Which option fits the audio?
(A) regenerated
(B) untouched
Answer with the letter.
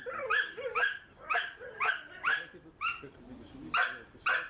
B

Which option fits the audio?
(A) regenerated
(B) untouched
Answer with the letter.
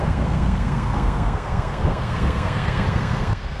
A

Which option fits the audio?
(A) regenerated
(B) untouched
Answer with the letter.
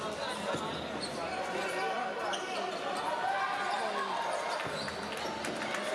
B